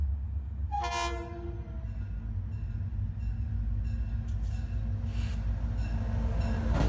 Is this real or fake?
real